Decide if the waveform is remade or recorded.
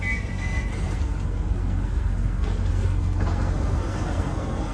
remade